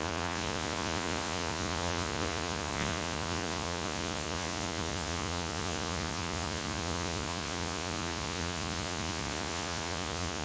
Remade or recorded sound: remade